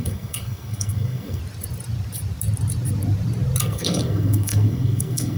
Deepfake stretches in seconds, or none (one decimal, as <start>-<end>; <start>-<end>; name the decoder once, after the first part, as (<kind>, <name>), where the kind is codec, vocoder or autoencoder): 0.0-1.4 (codec, SNAC); 3.6-5.4